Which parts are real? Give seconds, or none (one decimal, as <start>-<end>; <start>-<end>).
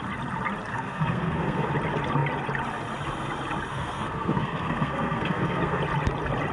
0.0-0.7; 1.7-3.7; 5.8-6.5